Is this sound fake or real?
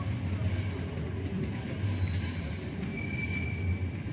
real